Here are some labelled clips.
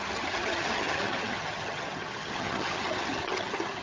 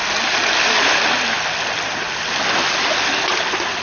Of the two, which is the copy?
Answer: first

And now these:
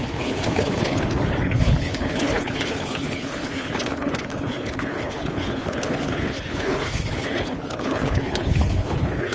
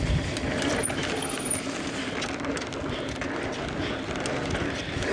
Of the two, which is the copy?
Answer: first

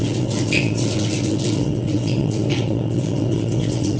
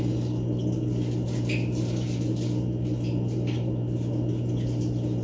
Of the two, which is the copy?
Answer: first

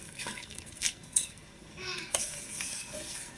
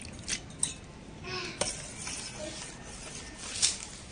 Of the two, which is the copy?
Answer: first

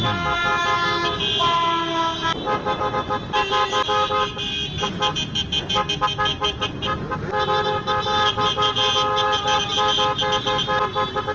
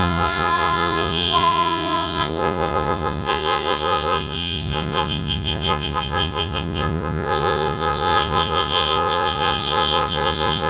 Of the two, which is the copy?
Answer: second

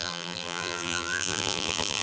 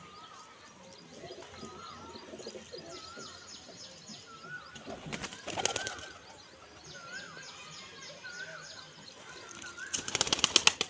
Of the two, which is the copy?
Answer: first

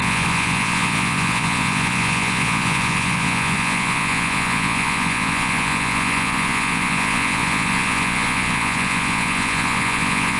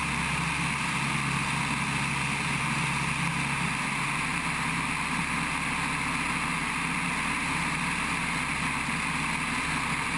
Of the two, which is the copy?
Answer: first